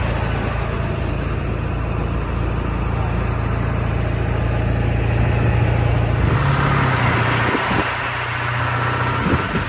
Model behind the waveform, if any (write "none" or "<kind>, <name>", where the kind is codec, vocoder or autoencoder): none